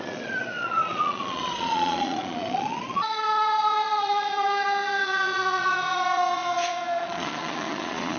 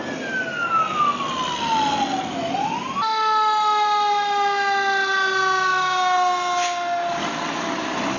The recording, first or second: second